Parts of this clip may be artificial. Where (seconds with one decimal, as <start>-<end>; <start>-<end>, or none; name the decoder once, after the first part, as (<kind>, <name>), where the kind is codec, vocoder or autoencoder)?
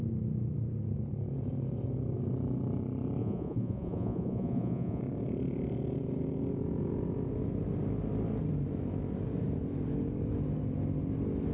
3.2-5.0 (vocoder, Vocos)